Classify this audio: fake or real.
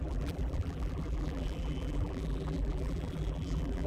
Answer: fake